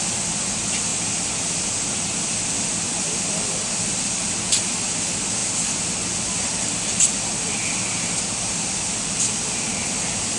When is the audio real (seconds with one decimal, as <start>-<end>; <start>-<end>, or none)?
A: 0.0-10.4